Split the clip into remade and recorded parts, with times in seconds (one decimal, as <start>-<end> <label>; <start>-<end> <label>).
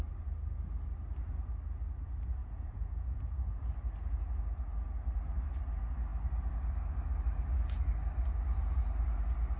0.0-2.4 recorded; 2.4-3.6 remade; 3.6-9.6 recorded